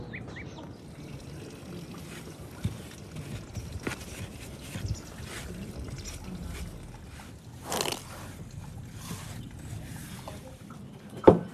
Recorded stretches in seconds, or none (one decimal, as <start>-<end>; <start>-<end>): 0.0-10.0